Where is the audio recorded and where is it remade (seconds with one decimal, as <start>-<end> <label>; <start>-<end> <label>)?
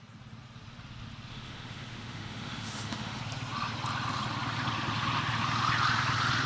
0.0-1.3 recorded; 1.3-3.2 remade; 3.2-6.5 recorded